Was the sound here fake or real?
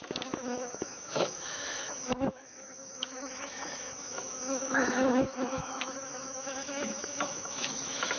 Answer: fake